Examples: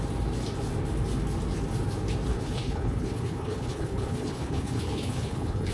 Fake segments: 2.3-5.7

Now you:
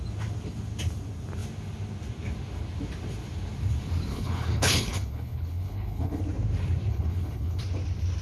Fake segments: 4.1-6.2; 6.9-7.6

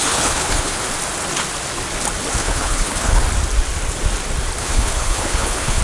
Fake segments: 0.0-0.8; 2.4-3.2; 4.6-5.8

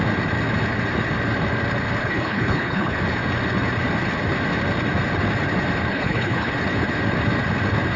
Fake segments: 2.0-3.0; 5.9-6.5